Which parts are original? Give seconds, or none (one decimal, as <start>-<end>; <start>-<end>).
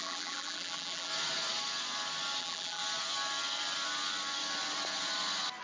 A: 1.1-2.4; 2.8-5.6